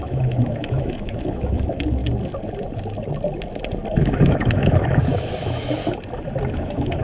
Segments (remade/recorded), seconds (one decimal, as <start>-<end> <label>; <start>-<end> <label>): 0.0-2.0 remade; 2.0-4.0 recorded; 4.0-5.8 remade; 5.8-6.5 recorded; 6.5-7.0 remade